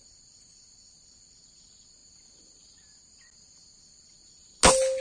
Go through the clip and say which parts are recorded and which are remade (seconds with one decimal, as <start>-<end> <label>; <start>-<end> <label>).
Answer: 0.0-5.0 recorded